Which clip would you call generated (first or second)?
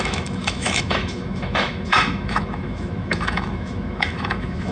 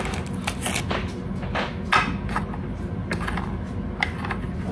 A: first